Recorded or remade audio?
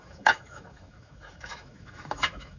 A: remade